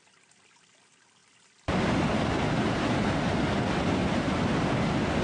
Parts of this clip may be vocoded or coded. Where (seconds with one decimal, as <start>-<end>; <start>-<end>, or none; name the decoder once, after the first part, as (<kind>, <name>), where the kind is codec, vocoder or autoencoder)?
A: none